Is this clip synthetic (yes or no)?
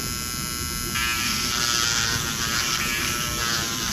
no